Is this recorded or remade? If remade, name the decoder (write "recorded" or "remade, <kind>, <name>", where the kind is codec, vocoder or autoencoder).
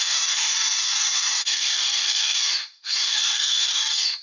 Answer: remade, codec, DAC